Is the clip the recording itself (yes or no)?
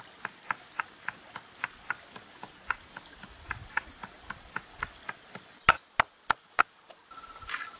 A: yes